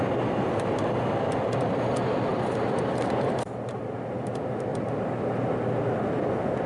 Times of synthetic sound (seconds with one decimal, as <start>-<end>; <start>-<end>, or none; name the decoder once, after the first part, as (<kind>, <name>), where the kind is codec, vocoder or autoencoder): 2.3-3.8 (vocoder, BigVGAN v2); 4.7-5.8